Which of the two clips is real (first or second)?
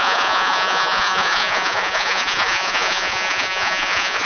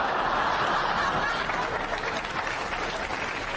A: second